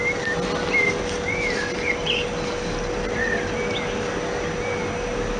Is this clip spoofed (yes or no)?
no